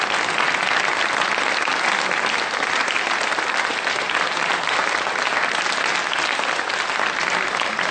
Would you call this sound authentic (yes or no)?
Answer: yes